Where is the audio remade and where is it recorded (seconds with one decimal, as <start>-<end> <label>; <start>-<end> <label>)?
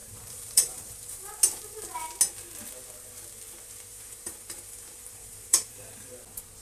0.0-1.3 remade; 1.3-3.9 recorded; 3.9-6.1 remade; 6.1-6.6 recorded